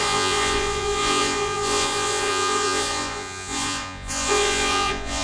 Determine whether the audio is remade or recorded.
remade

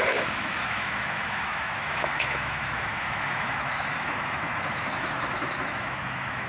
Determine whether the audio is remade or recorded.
remade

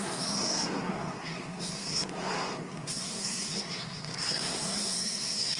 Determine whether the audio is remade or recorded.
remade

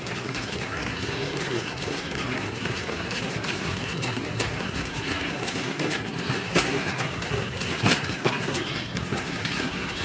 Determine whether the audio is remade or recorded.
remade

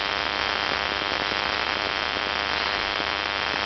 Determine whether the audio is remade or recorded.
recorded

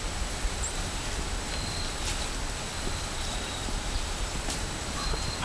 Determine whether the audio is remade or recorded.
recorded